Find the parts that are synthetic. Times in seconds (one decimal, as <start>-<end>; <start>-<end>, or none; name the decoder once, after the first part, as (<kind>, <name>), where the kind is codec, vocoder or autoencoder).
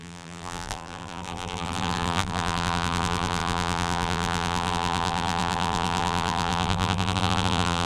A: 0.0-7.8 (vocoder, BigVGAN v2)